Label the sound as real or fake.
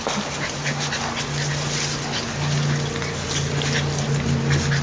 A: real